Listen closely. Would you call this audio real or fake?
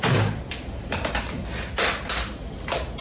real